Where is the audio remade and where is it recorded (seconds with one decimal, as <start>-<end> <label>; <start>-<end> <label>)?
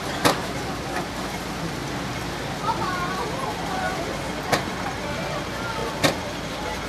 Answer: 0.0-6.9 recorded